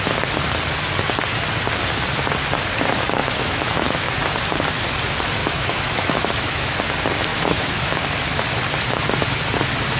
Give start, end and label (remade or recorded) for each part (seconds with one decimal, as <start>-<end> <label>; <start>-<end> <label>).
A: 0.0-3.2 recorded; 3.2-4.1 remade; 4.1-5.4 recorded; 5.4-6.8 remade; 6.8-7.3 recorded; 7.3-8.0 remade; 8.0-10.0 recorded